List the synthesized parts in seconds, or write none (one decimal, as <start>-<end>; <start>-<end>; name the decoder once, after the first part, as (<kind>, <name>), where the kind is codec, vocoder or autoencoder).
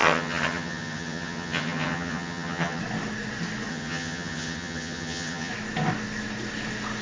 0.0-2.8 (vocoder, HiFi-GAN); 3.7-5.5